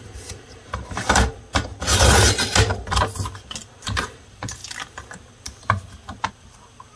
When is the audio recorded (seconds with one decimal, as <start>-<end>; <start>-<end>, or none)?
1.7-3.8; 4.6-6.3